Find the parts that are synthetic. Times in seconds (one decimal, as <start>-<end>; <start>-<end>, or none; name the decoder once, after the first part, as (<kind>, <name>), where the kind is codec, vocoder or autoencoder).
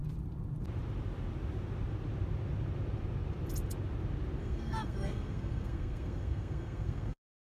4.4-7.4 (codec, SNAC)